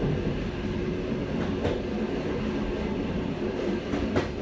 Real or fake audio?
real